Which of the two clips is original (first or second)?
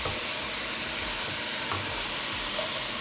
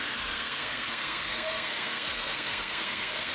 first